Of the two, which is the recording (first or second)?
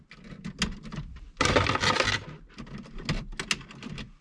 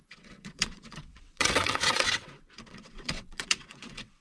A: first